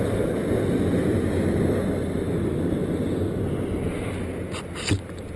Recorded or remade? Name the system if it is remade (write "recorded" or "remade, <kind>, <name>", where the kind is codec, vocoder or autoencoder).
recorded